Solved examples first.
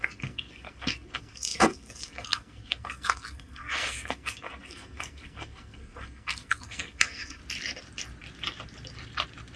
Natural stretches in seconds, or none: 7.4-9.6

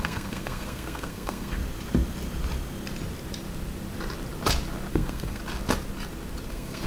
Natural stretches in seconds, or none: 1.6-4.9; 5.4-6.5